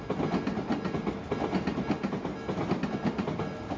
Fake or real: real